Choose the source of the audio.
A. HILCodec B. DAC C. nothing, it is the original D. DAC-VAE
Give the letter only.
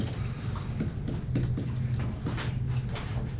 C